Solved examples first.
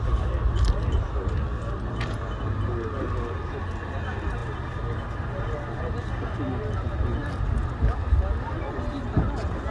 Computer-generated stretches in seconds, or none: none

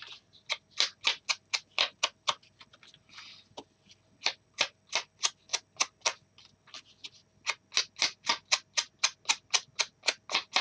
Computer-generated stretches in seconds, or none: none